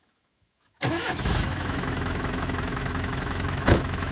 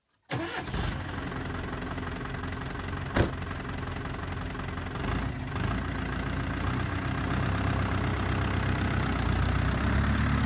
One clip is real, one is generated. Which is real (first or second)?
second